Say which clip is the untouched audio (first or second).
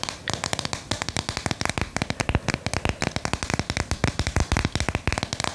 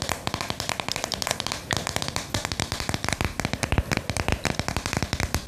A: first